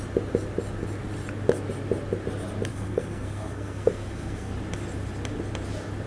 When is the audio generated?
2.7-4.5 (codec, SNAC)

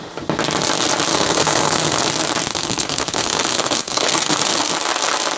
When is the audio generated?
1.1-2.0 (codec, SNAC); 2.5-4.7

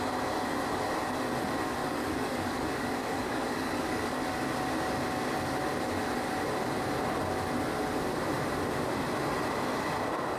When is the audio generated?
1.8-4.2 (codec, DAC)

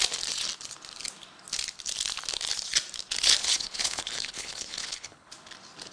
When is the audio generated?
3.4-5.3 (codec, HILCodec)

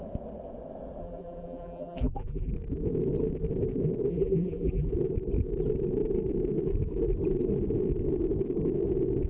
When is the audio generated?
1.0-2.5 (vocoder, BigVGAN v2); 4.1-4.9

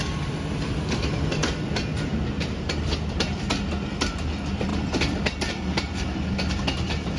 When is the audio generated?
none